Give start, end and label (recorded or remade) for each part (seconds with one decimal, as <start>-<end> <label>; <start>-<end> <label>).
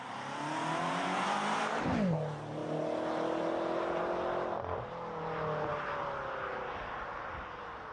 0.0-7.9 recorded